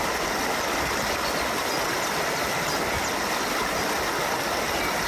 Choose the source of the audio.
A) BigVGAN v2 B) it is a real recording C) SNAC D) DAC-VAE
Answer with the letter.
B